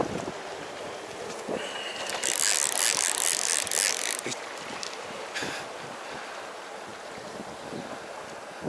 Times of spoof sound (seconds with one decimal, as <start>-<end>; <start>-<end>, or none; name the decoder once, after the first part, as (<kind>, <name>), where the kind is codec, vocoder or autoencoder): none